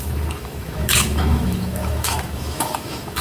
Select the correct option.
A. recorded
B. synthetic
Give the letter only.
B